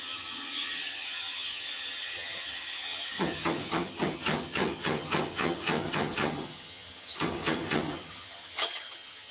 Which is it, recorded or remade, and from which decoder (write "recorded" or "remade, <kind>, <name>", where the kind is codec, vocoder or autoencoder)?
remade, vocoder, HiFi-GAN